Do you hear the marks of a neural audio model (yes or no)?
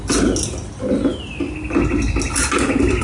no